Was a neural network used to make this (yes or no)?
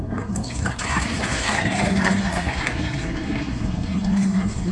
yes